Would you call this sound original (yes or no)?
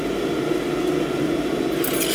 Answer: yes